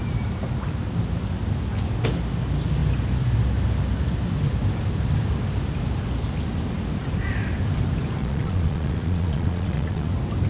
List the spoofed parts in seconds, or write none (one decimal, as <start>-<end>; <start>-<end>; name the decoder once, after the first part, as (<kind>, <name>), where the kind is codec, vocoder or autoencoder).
8.2-10.1 (vocoder, Vocos)